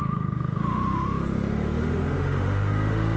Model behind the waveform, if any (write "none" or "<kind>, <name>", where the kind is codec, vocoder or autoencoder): autoencoder, DAC-VAE